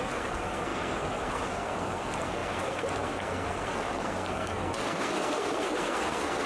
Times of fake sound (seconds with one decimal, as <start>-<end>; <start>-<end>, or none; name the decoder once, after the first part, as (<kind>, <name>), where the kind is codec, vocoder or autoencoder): 0.0-6.5 (codec, SNAC)